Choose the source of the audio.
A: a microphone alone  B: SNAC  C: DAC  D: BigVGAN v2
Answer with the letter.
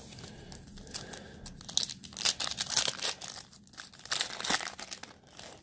A